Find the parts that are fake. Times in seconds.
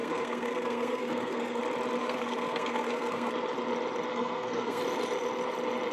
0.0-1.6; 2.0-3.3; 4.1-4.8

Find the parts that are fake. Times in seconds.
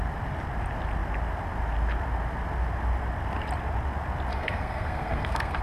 4.3-5.6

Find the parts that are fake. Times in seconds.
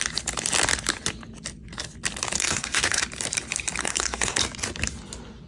2.4-3.0; 3.8-4.4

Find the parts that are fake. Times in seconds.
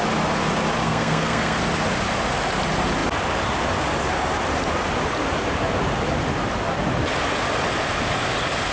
0.8-1.6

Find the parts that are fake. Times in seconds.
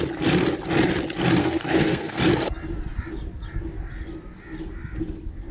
1.4-2.2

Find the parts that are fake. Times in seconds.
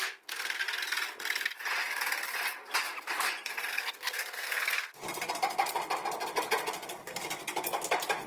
0.0-0.6; 3.7-5.0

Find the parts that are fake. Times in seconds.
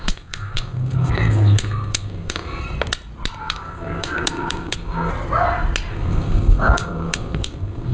0.0-2.6; 3.4-5.1; 5.9-7.9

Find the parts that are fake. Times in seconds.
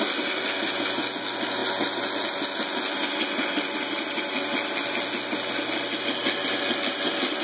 none